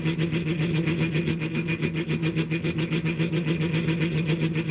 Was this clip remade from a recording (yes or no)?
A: no